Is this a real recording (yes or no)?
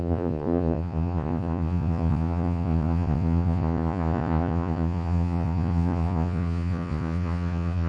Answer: no